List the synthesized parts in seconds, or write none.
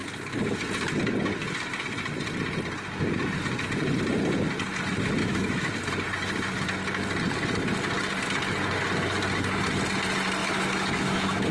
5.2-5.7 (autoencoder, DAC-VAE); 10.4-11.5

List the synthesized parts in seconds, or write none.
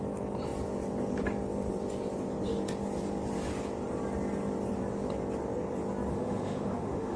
6.1-7.2 (autoencoder, DAC-VAE)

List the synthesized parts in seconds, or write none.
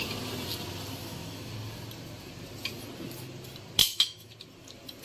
1.0-1.5 (autoencoder, DAC-VAE); 3.8-4.3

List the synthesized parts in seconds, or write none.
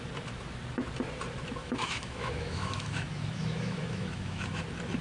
1.6-4.6 (autoencoder, DAC-VAE)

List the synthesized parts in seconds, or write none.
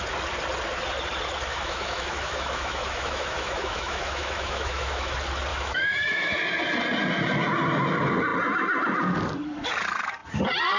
1.5-5.1 (autoencoder, DAC-VAE); 5.5-6.4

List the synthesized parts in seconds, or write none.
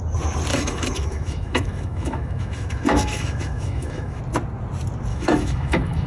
0.5-4.2 (autoencoder, DAC-VAE); 5.1-6.1